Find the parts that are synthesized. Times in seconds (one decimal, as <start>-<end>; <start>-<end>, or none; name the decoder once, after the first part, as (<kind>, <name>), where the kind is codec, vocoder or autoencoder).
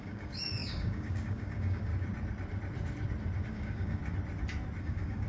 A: 0.0-1.9 (codec, DAC); 3.5-4.0; 4.8-5.3